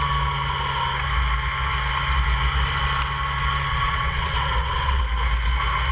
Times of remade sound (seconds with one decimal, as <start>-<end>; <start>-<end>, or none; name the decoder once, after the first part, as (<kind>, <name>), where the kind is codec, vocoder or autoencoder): 3.7-5.0 (vocoder, WaveNeXt)